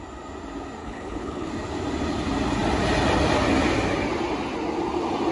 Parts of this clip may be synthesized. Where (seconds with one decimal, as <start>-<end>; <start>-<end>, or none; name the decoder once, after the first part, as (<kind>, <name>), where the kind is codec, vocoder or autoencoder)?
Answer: 0.8-1.5 (codec, HILCodec)